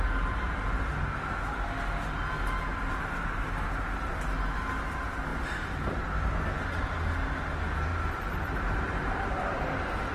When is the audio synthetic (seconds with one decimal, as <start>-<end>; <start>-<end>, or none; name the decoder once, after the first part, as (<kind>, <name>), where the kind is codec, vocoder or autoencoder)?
5.3-6.0 (vocoder, BigVGAN v2); 7.9-9.3